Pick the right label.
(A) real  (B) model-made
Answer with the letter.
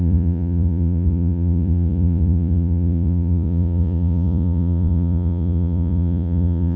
B